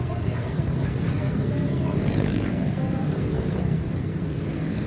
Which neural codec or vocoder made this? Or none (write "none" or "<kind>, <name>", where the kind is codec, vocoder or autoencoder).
codec, SNAC